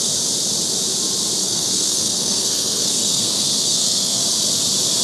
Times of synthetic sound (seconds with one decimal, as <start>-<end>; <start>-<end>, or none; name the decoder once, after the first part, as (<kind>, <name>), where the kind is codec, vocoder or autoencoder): 1.4-4.2 (codec, SNAC)